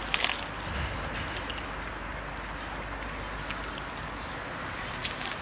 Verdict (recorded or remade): recorded